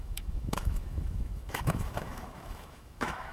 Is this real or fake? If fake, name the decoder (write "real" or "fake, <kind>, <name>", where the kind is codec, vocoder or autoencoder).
fake, autoencoder, DAC-VAE